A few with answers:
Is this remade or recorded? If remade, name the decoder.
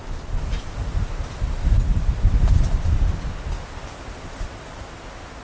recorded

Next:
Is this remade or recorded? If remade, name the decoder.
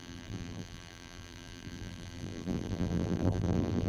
remade, vocoder, BigVGAN v2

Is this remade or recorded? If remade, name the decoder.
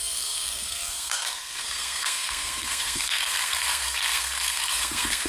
remade, codec, SNAC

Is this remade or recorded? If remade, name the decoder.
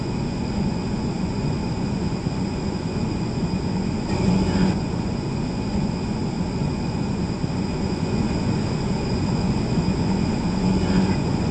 remade, vocoder, Vocos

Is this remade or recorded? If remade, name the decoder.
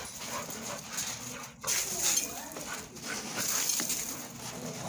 recorded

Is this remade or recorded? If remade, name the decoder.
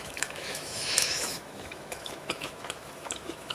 remade, autoencoder, DAC-VAE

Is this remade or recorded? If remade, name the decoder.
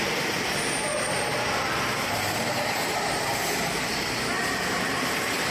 remade, vocoder, BigVGAN v2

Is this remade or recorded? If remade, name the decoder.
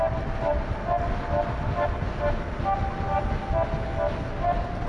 recorded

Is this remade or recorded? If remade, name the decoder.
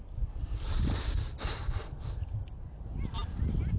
recorded